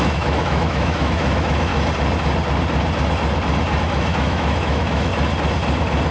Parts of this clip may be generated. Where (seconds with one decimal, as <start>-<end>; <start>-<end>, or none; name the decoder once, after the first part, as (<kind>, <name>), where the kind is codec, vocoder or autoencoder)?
0.0-1.7 (autoencoder, DAC-VAE); 3.8-5.1